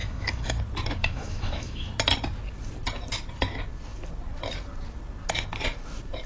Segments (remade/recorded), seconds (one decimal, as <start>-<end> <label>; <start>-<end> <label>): 0.0-0.5 remade; 0.5-1.0 recorded; 1.0-1.9 remade; 1.9-6.3 recorded